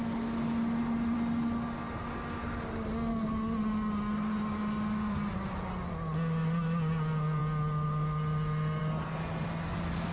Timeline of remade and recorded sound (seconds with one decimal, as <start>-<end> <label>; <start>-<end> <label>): 0.0-10.1 recorded